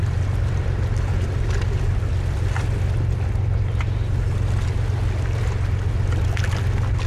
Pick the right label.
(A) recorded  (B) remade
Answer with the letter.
A